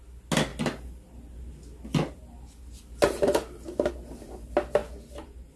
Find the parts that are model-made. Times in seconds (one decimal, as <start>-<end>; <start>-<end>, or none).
none